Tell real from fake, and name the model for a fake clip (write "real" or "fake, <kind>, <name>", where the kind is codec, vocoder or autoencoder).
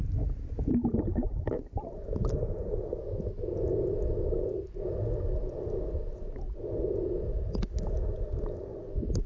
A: real